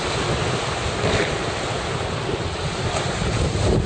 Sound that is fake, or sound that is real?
real